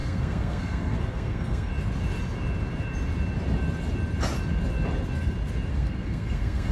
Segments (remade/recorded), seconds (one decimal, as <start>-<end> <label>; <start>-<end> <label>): 0.0-1.7 remade; 1.7-5.7 recorded; 5.7-6.7 remade